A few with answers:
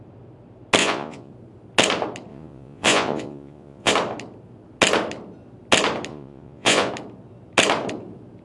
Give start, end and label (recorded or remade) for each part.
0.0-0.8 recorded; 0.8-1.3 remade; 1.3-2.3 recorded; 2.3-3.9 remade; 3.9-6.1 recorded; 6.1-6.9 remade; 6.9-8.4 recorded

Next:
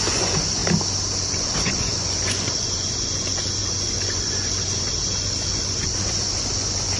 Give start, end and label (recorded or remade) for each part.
0.0-0.6 remade; 0.6-1.3 recorded; 1.3-7.0 remade

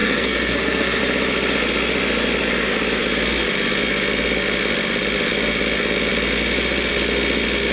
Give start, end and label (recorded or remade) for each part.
0.0-1.0 remade; 1.0-7.7 recorded

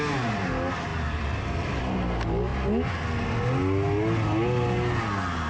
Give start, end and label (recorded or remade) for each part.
0.0-0.9 recorded; 0.9-1.8 remade; 1.8-5.5 recorded